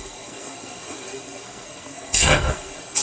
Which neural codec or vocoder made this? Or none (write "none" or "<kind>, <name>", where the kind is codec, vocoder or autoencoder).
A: codec, SNAC